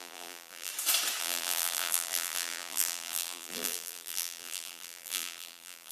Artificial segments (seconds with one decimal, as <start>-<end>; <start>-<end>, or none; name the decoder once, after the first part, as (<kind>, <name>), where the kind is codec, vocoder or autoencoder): 0.0-0.7 (vocoder, BigVGAN v2); 1.2-5.9